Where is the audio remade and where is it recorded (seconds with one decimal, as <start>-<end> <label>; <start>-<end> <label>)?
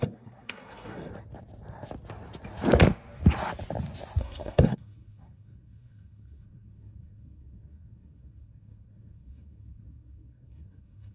0.0-1.1 remade; 1.1-4.2 recorded; 4.2-11.1 remade